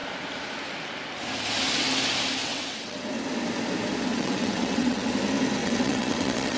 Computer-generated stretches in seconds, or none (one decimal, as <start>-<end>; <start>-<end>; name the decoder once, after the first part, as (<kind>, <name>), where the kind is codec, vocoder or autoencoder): 2.4-3.1 (vocoder, WaveNeXt); 4.1-5.1; 5.6-6.6